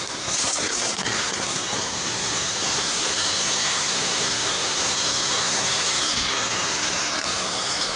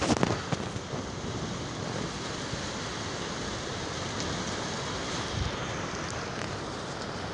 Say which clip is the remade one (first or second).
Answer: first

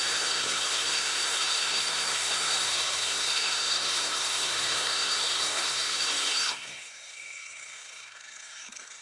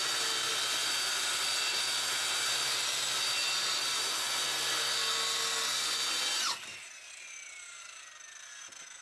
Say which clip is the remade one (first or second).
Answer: first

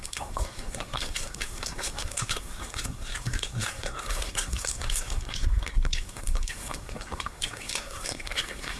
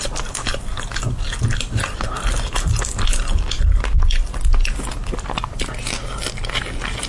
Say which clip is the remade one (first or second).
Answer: first